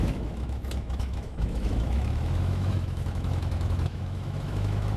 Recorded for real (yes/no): no